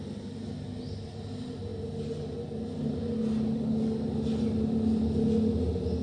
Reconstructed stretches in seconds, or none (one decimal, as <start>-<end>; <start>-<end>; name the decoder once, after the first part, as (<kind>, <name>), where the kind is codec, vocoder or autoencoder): none